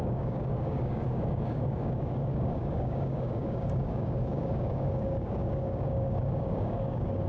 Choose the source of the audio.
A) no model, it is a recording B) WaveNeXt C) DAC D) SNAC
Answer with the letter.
C